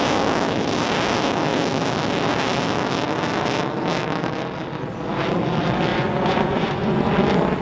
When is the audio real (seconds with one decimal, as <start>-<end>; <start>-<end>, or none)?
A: 0.0-5.9; 7.1-7.6